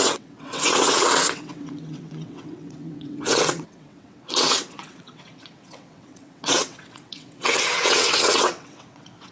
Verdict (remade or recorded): remade